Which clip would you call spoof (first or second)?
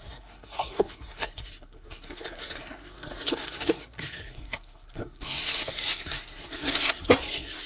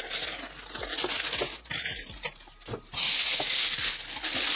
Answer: first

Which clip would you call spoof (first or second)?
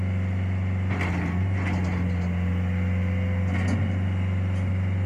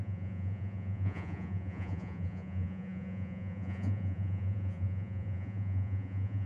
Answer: second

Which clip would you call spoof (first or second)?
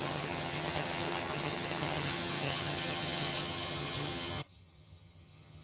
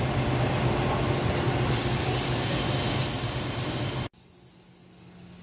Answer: first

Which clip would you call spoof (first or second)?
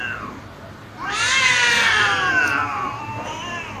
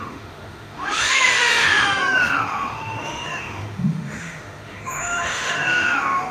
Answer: second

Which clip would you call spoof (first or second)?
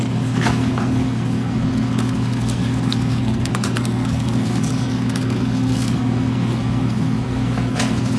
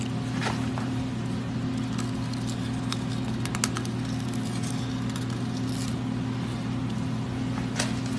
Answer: first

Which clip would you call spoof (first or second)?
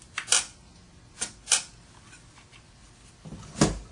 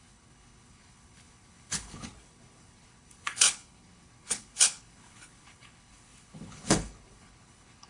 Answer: second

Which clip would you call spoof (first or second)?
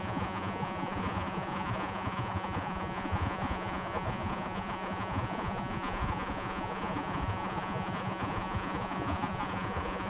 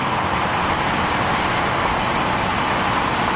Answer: first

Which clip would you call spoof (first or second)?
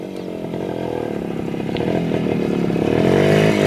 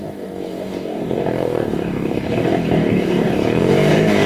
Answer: second